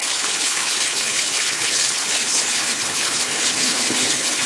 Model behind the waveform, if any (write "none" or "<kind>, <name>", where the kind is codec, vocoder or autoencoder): codec, HILCodec